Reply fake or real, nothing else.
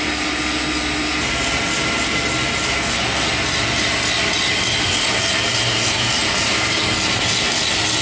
real